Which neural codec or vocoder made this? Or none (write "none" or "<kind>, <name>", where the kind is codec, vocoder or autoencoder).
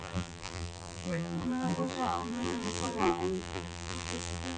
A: vocoder, BigVGAN v2